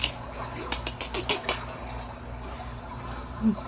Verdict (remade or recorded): recorded